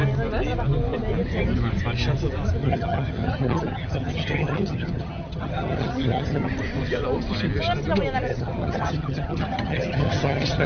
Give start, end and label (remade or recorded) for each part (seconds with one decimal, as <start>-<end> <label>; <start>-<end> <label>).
0.0-2.6 recorded; 2.6-6.5 remade; 6.5-8.3 recorded; 8.3-10.7 remade